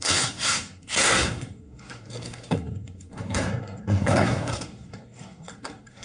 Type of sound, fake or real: fake